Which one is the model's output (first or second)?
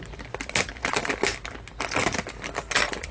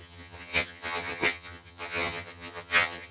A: second